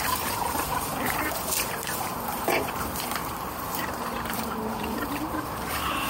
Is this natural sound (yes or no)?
no